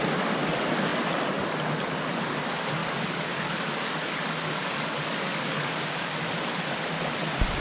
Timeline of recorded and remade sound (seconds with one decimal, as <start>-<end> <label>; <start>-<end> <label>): 0.0-2.8 recorded; 2.8-6.1 remade; 6.1-7.6 recorded